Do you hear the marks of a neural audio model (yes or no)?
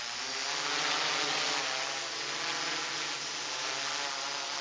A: no